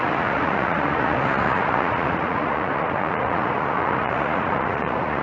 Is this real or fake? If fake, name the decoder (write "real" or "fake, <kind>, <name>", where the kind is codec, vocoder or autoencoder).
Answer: fake, vocoder, Vocos